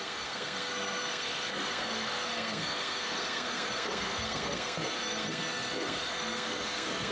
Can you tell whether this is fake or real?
fake